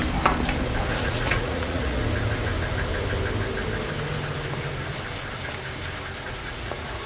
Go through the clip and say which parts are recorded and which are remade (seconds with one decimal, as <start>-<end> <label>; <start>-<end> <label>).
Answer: 0.0-1.0 recorded; 1.0-2.0 remade; 2.0-6.3 recorded; 6.3-7.1 remade